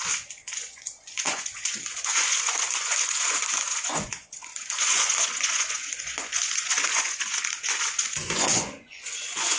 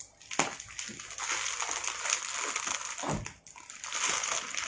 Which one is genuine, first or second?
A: second